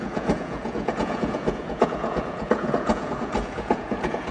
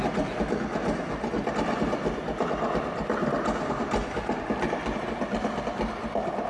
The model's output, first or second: first